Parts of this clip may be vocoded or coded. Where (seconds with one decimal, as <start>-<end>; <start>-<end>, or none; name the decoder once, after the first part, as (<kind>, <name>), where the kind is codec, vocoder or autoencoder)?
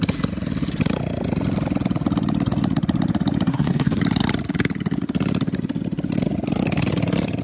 3.5-4.0 (codec, SNAC)